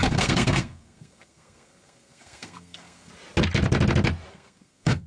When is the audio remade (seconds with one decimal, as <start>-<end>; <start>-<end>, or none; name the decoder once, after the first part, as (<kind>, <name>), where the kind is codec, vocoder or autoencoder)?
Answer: 0.0-3.1 (codec, SNAC); 4.3-5.1